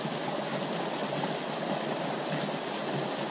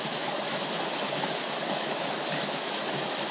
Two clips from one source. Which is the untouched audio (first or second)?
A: first